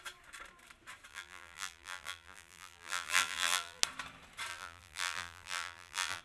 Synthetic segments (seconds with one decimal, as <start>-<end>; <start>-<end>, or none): 1.1-3.8; 4.5-6.2